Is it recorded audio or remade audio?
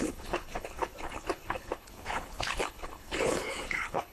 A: remade